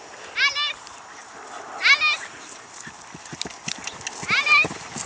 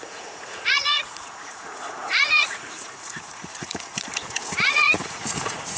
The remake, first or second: second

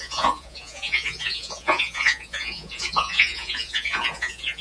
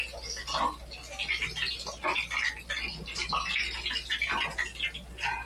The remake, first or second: first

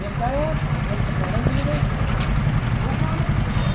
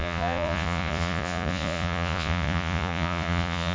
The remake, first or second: second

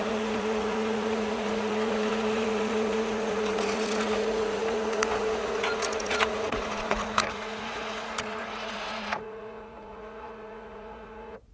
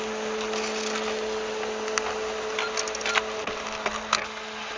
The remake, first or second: first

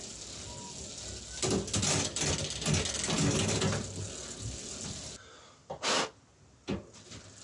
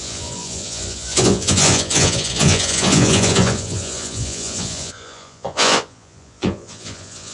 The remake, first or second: second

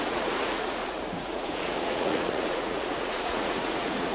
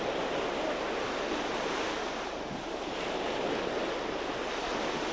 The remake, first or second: first